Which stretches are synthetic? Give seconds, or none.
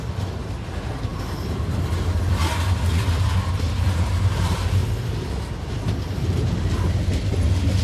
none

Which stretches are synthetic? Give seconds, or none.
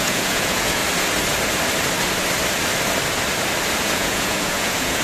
0.0-0.8 (vocoder, Vocos); 3.8-5.0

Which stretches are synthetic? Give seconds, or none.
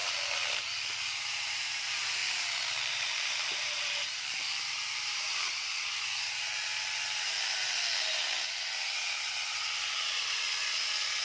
1.3-2.2 (vocoder, BigVGAN v2); 2.8-5.7